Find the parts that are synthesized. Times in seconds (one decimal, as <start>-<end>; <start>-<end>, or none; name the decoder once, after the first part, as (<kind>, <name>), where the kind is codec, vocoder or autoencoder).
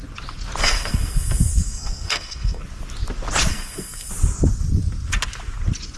0.6-2.6 (codec, SNAC); 3.5-4.1